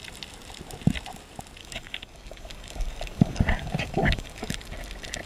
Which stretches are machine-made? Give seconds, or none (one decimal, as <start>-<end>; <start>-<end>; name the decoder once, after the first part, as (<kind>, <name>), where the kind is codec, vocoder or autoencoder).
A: 1.6-4.6 (codec, DAC)